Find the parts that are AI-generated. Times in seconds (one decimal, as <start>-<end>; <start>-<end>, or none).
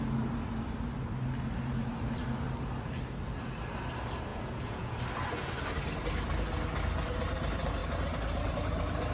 4.3-5.0